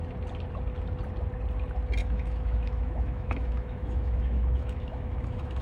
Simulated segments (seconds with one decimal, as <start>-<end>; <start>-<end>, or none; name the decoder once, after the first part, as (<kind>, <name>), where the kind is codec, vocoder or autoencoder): 2.0-5.6 (autoencoder, DAC-VAE)